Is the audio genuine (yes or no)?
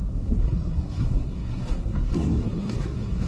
no